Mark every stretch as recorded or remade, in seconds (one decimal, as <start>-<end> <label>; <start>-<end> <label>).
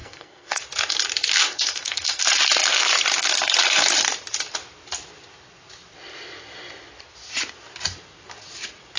0.0-0.6 remade; 0.6-1.4 recorded; 1.4-2.2 remade; 2.2-9.0 recorded